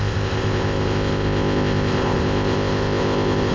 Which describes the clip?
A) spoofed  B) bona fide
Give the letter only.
A